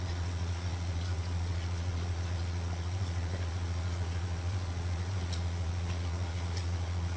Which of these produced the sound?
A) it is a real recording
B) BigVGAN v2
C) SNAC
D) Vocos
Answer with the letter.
D